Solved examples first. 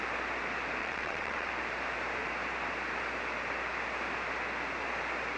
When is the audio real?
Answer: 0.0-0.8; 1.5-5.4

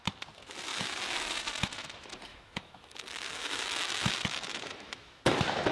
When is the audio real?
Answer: 0.0-0.7; 1.3-2.3; 5.2-5.7

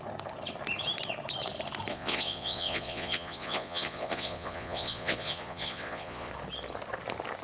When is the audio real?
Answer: 0.0-1.9; 6.3-7.4